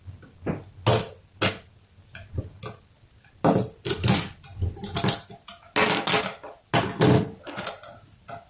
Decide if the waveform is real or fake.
real